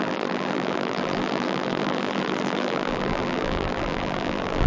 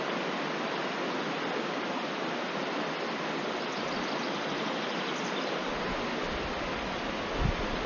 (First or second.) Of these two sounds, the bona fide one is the second